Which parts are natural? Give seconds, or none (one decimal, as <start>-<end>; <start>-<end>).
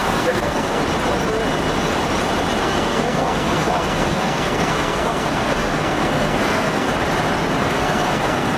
0.8-2.6; 6.9-7.6